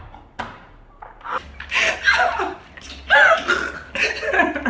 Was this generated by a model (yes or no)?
no